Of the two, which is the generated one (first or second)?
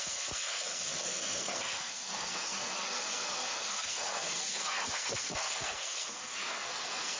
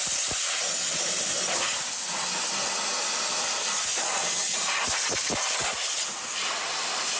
first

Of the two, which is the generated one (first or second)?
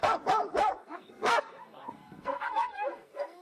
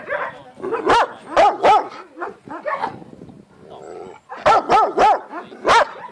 first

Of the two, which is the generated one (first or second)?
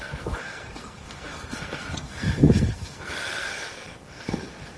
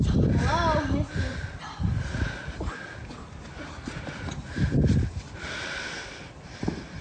first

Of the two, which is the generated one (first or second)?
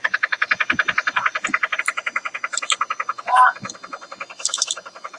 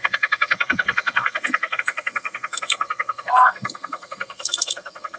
second